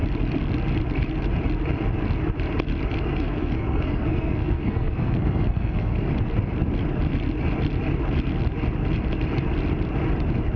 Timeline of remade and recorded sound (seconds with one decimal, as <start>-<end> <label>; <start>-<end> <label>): 0.0-2.9 recorded; 2.9-6.1 remade; 6.1-10.6 recorded